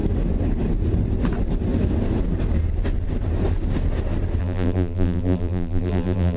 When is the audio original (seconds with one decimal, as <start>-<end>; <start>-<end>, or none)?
0.0-4.4